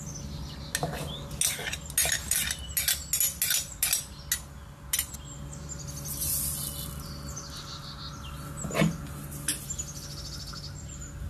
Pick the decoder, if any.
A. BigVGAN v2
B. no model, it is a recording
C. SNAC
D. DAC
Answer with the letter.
B